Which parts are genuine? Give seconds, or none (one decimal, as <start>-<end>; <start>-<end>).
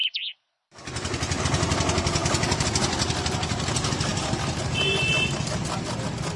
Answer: 0.0-6.4